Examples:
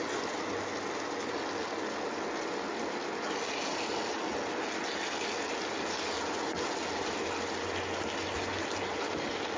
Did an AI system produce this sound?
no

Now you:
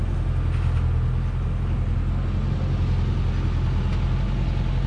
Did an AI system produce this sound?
no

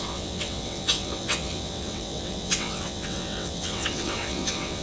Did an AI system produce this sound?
yes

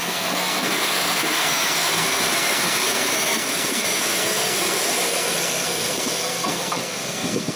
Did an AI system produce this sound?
yes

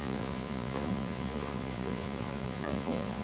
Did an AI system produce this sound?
yes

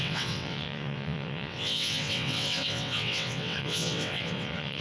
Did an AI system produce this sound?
yes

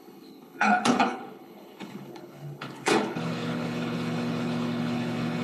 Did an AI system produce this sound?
yes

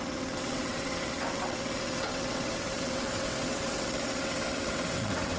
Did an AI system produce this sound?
yes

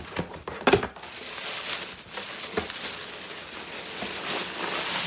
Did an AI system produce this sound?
no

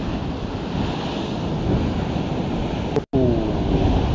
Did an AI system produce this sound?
no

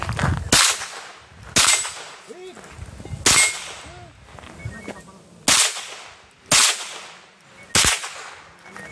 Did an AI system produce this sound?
no